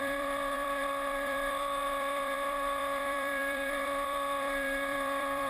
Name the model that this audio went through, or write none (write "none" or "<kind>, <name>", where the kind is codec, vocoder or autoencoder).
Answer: vocoder, BigVGAN v2